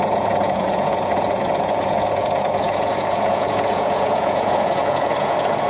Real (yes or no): no